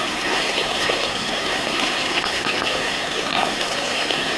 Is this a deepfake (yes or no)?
yes